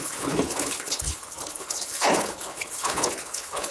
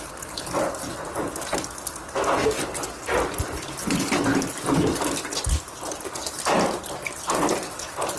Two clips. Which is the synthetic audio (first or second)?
first